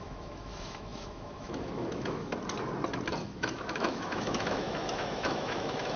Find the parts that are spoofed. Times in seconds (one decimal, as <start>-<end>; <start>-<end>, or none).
0.0-2.3; 3.2-6.0